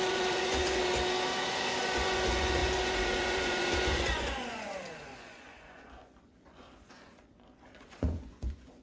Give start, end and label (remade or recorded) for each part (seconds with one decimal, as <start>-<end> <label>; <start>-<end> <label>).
0.0-0.8 remade; 0.8-1.8 recorded; 1.8-8.8 remade